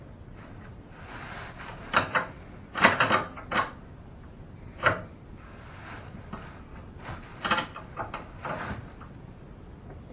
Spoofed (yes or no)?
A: no